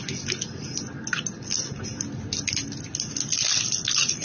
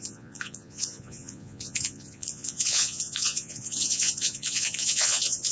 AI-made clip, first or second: second